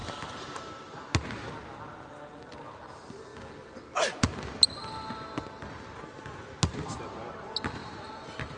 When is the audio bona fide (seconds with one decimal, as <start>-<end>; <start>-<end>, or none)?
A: 0.0-7.8